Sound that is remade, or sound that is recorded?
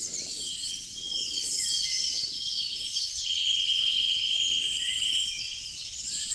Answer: remade